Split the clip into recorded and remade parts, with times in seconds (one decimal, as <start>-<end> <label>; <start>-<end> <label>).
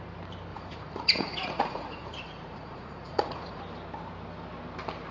0.0-0.5 recorded; 0.5-3.6 remade; 3.6-5.1 recorded